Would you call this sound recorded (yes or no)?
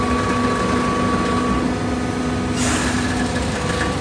yes